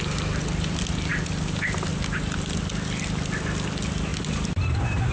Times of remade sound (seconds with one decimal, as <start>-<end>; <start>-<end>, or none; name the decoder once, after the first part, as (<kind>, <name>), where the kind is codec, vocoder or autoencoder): none